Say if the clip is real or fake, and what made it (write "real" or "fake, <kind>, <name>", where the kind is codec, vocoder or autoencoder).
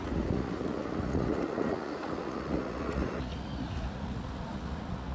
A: fake, vocoder, Vocos